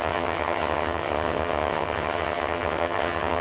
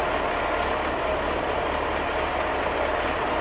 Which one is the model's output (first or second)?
first